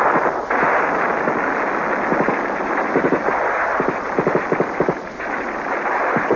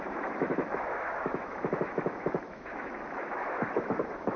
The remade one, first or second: second